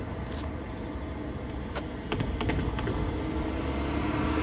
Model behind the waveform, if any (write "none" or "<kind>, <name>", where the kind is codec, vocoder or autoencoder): none